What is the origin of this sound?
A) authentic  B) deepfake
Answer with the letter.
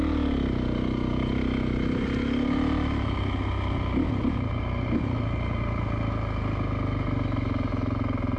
A